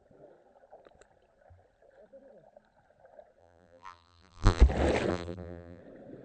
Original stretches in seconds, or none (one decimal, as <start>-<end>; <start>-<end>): 0.0-3.4; 4.6-5.1; 5.8-6.2